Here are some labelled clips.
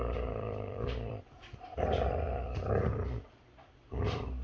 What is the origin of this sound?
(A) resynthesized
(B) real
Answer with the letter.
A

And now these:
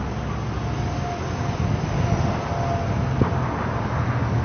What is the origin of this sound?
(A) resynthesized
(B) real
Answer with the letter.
B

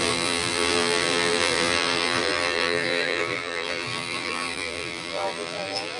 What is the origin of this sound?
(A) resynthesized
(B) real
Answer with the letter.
A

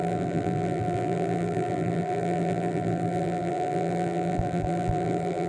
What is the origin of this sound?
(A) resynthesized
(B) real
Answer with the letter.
A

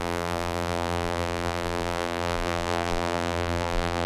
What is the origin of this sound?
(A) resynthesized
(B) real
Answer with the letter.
A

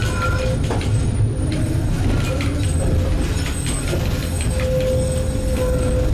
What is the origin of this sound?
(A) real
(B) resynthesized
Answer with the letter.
A